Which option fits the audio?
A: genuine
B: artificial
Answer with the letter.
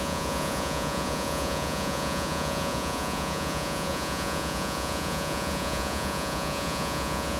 B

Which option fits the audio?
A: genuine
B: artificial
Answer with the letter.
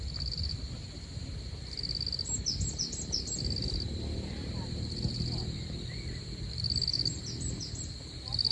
A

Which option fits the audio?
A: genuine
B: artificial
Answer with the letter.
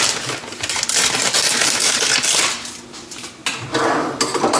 A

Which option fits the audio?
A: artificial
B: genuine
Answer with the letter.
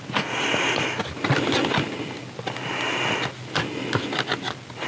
B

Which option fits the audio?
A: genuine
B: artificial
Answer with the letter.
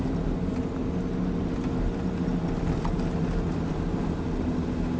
A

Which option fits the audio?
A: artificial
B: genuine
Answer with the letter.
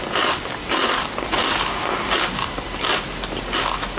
B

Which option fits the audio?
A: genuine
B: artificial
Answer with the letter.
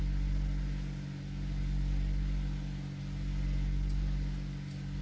A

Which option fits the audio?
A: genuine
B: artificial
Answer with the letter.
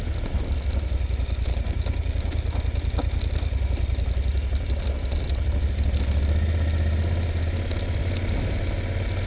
A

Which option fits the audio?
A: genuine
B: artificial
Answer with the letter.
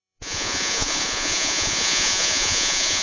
B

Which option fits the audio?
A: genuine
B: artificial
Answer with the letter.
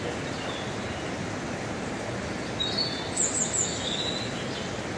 A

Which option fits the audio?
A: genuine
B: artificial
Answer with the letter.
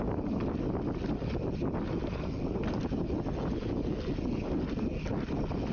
A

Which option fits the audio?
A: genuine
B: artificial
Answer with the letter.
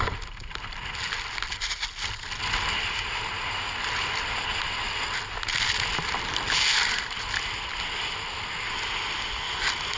A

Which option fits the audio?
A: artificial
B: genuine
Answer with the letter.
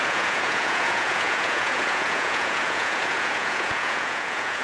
A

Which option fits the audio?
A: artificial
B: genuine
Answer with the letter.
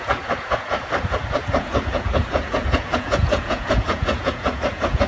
A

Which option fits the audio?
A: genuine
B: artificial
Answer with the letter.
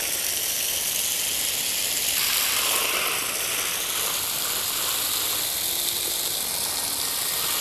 A